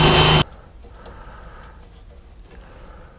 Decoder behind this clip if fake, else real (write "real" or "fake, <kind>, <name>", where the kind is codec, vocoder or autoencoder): real